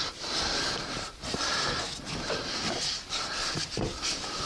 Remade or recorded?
recorded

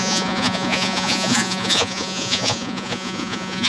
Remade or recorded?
remade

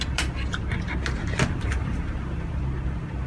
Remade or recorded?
recorded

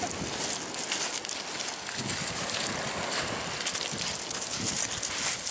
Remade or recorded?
recorded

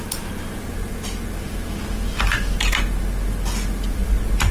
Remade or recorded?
recorded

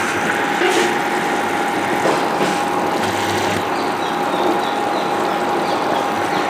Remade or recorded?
recorded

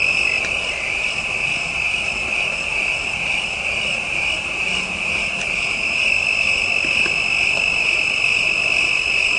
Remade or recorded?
recorded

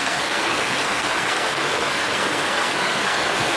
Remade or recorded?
remade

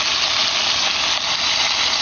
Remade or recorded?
recorded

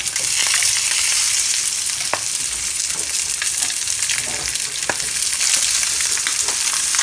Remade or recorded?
recorded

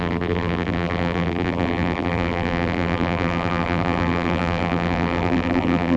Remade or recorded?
remade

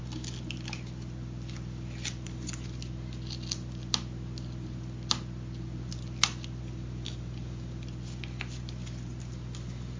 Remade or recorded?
recorded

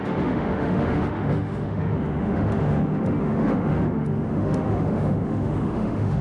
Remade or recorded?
remade